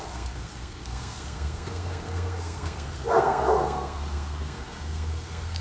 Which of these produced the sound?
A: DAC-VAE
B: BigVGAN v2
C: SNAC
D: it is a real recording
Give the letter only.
C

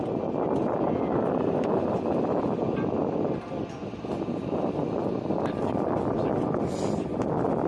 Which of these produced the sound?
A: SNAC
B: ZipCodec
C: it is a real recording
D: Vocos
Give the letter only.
C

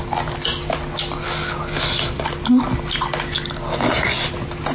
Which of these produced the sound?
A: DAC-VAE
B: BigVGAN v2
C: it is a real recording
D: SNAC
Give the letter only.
C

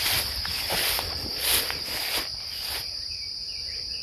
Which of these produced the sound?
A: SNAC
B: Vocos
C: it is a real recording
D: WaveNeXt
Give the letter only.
C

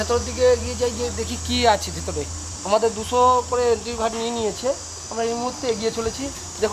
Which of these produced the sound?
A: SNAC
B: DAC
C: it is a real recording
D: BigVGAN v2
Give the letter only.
C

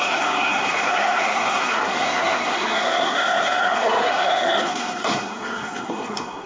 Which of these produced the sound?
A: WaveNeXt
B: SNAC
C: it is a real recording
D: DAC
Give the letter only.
B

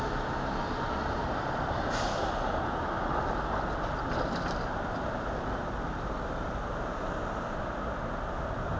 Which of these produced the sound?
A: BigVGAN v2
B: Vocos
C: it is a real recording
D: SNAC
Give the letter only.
C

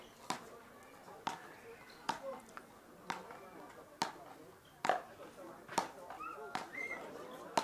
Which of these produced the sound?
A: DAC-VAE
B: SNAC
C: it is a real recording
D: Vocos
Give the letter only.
C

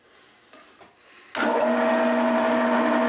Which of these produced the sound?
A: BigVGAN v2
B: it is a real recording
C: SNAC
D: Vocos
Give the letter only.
B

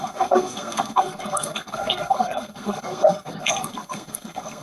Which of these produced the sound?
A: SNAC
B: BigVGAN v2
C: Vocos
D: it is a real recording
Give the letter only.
A